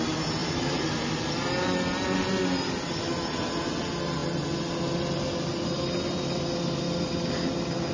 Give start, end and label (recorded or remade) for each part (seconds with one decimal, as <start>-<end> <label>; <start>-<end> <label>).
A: 0.0-7.9 recorded